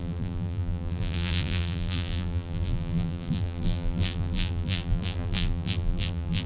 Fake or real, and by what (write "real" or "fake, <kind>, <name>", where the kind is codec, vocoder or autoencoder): fake, vocoder, BigVGAN v2